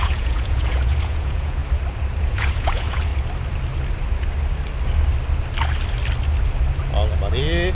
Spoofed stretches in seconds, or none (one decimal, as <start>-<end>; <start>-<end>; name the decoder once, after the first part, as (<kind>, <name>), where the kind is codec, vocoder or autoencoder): 0.0-1.6 (vocoder, Vocos); 2.2-3.1